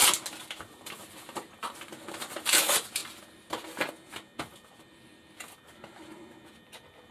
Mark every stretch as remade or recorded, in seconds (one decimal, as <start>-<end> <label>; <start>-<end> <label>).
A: 0.0-0.6 recorded; 0.6-3.0 remade; 3.0-6.5 recorded; 6.5-7.1 remade